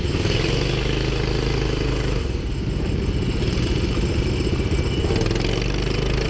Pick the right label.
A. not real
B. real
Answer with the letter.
B